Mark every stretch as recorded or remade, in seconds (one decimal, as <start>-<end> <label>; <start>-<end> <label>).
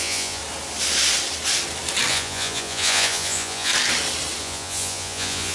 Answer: 0.0-0.4 remade; 0.4-2.1 recorded; 2.1-3.7 remade; 3.7-4.4 recorded; 4.4-5.5 remade